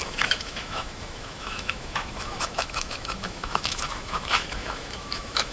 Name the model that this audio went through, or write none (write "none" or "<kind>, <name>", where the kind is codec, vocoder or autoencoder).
autoencoder, DAC-VAE